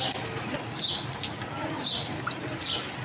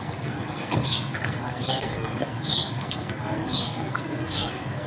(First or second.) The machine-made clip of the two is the second